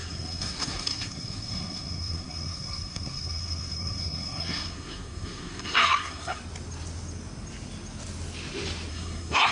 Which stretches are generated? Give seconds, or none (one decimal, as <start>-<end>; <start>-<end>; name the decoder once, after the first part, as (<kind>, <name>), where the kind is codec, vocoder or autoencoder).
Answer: 0.0-6.4 (codec, SNAC); 8.9-9.5